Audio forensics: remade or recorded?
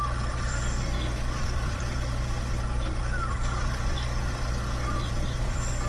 remade